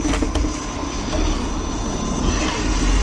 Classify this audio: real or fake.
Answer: real